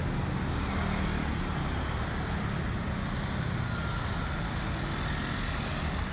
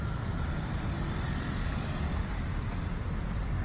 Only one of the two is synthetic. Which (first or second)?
second